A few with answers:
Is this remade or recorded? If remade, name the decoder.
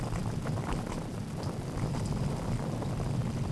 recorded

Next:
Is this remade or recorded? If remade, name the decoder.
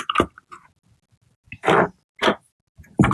recorded